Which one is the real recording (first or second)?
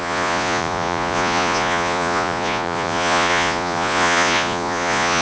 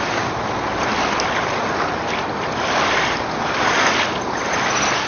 second